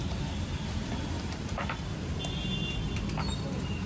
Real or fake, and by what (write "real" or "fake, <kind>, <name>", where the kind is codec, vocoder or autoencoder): real